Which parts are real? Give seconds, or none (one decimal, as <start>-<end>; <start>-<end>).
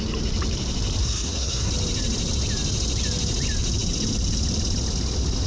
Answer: 0.0-1.0; 1.7-5.5